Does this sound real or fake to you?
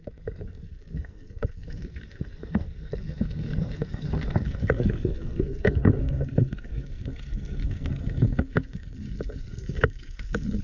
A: fake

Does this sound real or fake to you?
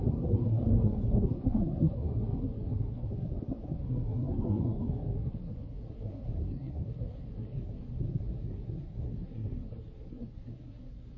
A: fake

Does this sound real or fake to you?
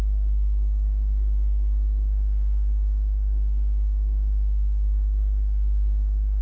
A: fake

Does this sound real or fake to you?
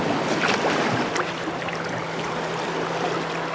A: real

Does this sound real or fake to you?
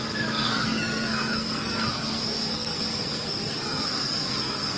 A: fake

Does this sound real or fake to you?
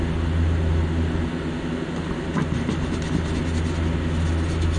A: real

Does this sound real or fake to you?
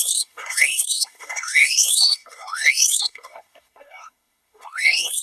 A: fake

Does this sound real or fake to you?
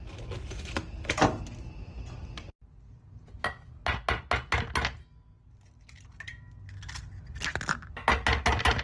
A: real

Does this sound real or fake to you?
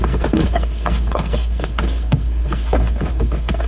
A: fake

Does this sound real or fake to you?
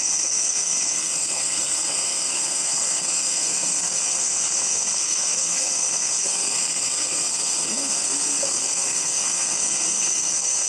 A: fake